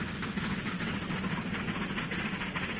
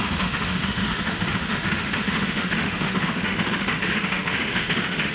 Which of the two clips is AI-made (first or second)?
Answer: second